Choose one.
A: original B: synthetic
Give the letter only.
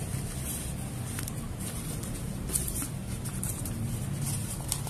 A